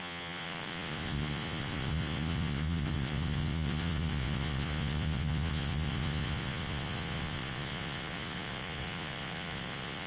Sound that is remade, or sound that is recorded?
remade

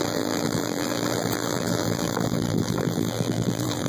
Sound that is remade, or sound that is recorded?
remade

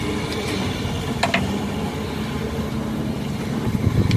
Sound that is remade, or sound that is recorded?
recorded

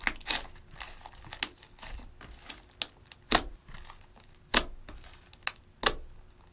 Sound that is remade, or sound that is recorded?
recorded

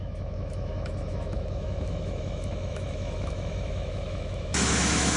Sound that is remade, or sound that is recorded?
remade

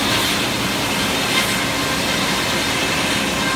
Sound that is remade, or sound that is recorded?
recorded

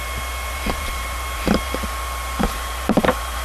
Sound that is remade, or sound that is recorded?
remade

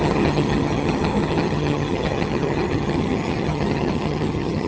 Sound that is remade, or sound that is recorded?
remade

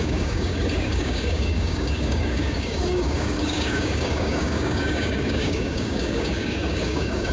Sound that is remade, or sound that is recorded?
remade